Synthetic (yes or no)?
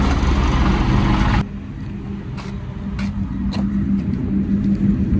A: no